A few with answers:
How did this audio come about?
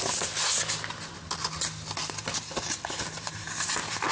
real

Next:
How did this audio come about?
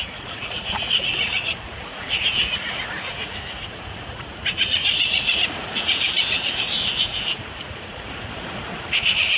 fake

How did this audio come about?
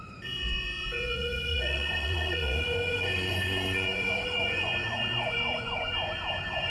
fake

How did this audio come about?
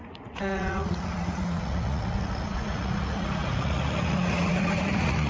fake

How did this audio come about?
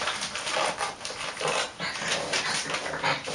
real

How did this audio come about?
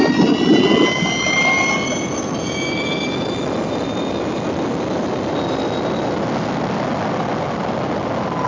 real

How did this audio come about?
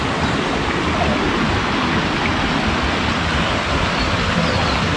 real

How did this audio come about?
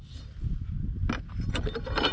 real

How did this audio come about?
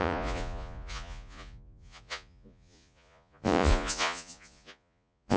fake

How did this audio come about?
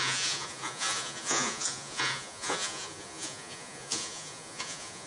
fake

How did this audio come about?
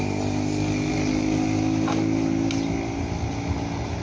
real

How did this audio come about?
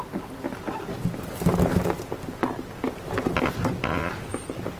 real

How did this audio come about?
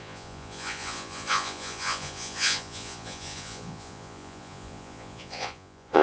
fake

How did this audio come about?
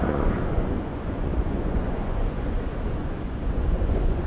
fake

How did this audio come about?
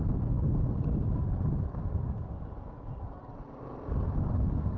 real